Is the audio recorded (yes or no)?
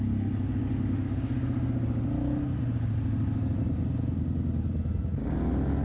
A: yes